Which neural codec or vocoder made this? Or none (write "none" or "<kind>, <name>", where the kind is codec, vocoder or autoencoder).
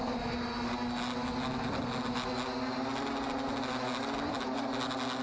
none